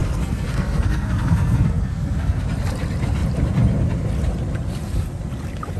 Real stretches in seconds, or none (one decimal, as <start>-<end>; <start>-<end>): 2.4-5.8